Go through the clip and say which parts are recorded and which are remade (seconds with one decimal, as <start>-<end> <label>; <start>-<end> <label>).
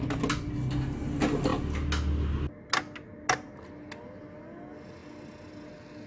0.0-6.1 recorded